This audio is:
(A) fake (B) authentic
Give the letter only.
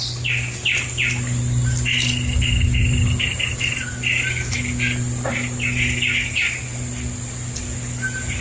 B